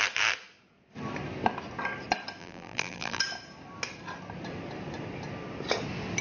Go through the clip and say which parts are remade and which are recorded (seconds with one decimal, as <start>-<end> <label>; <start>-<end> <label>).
0.0-2.4 recorded; 2.4-3.2 remade; 3.2-6.2 recorded